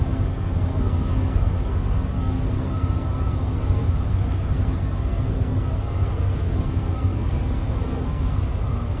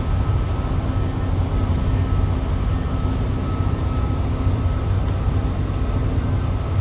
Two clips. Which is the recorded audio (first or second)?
second